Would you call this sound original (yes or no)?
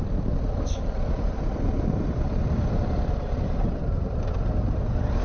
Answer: no